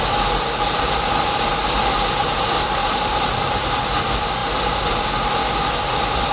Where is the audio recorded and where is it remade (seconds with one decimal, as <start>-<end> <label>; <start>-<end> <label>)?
0.0-2.8 recorded; 2.8-3.8 remade; 3.8-6.3 recorded